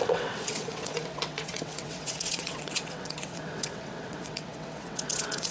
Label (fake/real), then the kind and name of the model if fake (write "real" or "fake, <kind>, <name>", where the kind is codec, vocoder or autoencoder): fake, vocoder, WaveNeXt